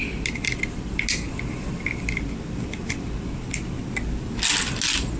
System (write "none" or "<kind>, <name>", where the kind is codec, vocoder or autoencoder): none